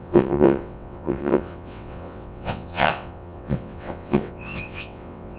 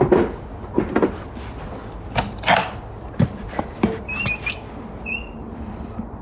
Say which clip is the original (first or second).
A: second